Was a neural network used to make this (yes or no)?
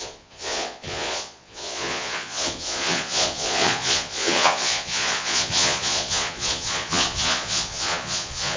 yes